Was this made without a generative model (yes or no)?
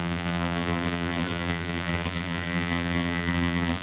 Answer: no